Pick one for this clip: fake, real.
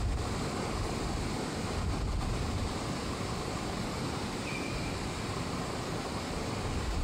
real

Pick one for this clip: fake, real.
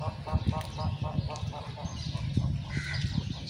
real